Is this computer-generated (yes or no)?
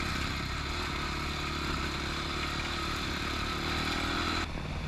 no